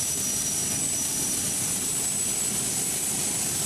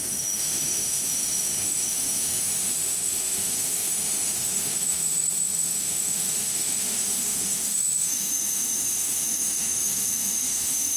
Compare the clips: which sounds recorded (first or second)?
first